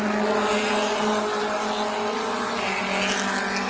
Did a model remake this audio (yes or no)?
no